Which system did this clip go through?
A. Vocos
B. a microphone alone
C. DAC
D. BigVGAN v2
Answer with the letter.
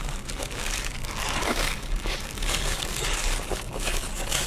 C